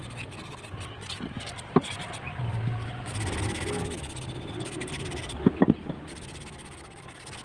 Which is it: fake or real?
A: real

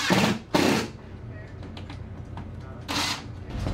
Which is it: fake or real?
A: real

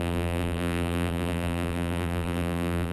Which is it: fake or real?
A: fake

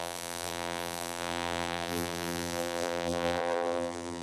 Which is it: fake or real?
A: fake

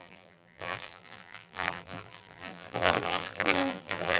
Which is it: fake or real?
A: fake